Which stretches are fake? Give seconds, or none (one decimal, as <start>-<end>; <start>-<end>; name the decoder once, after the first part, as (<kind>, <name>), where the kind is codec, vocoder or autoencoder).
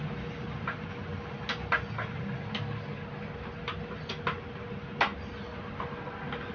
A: none